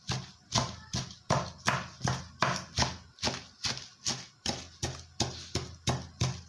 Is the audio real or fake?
real